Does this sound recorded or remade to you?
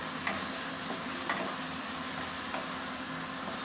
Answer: recorded